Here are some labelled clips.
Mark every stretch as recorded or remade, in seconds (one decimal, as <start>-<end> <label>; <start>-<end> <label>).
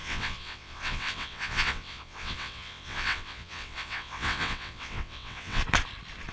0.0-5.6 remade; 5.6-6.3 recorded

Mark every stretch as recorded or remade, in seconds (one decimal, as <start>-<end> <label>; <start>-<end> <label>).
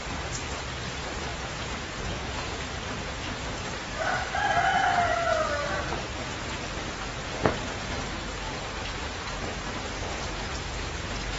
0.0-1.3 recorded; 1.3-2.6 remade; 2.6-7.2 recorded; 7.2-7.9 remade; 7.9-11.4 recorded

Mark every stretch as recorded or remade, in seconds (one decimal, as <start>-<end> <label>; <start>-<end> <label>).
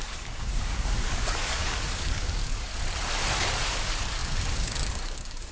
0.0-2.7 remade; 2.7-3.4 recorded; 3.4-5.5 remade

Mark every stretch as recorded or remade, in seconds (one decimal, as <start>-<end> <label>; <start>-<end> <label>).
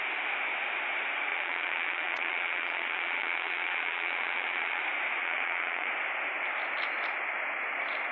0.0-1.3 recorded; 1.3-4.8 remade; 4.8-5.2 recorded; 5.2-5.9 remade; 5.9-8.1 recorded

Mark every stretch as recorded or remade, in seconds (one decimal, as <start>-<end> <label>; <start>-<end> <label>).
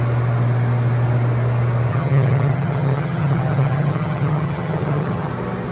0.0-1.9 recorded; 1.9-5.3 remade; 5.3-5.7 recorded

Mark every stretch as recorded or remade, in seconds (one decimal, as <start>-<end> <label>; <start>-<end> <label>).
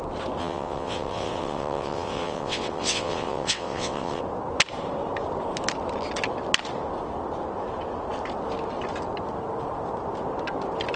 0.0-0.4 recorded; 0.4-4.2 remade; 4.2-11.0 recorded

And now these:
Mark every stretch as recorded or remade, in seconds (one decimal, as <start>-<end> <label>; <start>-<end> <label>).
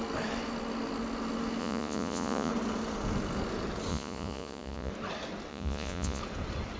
0.0-1.6 recorded; 1.6-2.5 remade; 2.5-3.9 recorded; 3.9-4.9 remade; 4.9-5.5 recorded; 5.5-6.2 remade; 6.2-6.8 recorded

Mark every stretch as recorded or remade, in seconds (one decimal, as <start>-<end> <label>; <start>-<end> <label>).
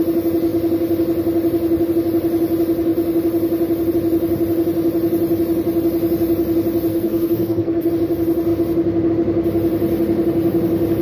0.0-6.9 recorded; 6.9-7.9 remade; 7.9-11.0 recorded